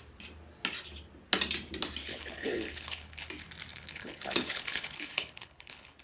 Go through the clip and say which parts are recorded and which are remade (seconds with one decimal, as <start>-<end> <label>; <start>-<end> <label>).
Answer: 0.0-2.1 recorded; 2.1-3.2 remade; 3.2-3.7 recorded; 3.7-6.0 remade